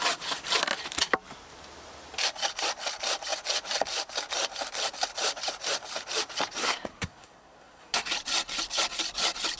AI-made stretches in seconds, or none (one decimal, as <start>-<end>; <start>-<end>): 6.6-8.1

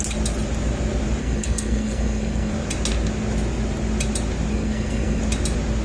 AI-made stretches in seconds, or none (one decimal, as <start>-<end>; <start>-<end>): 1.2-2.5; 4.5-5.2